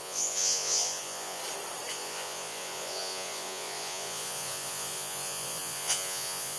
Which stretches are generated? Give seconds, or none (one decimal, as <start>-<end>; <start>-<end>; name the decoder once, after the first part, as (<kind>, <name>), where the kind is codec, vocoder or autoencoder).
0.0-1.4 (vocoder, Vocos); 1.9-6.6